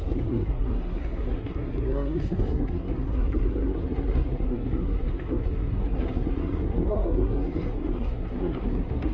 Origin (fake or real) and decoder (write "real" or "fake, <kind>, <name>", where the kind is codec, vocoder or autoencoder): fake, codec, SNAC